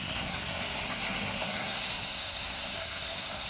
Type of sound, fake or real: fake